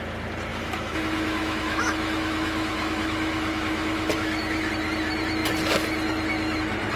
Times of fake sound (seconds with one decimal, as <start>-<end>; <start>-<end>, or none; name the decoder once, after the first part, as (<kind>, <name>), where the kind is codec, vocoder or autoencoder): 0.5-4.7 (autoencoder, DAC-VAE)